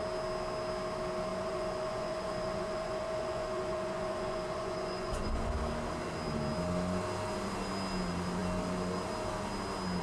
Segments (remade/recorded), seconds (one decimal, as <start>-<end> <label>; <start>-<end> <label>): 0.0-1.3 recorded; 1.3-5.5 remade; 5.5-10.0 recorded